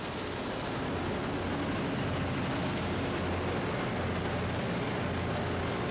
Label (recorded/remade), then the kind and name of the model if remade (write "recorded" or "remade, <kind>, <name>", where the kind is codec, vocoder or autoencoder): recorded